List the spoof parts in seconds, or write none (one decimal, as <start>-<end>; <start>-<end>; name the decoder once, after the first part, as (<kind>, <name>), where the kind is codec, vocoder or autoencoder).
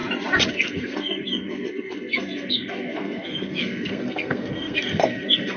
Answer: 0.5-5.6 (codec, SNAC)